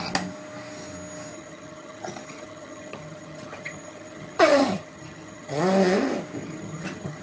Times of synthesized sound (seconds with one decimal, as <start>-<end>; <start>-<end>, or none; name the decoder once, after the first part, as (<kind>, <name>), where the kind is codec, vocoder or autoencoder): 1.3-5.6 (vocoder, HiFi-GAN); 6.4-7.2